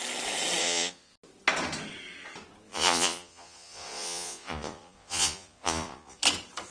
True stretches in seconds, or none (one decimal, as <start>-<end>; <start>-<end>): 0.0-0.6; 1.1-2.7; 6.2-6.7